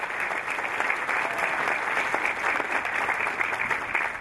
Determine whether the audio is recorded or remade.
recorded